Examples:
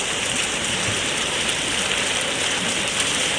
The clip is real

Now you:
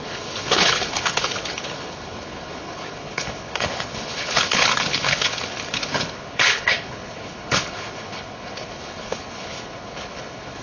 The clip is fake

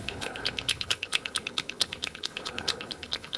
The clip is fake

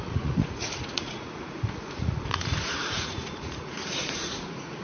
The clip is fake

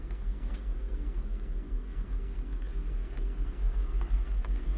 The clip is fake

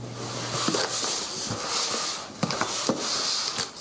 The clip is real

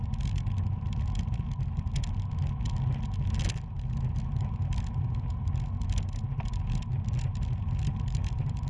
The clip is real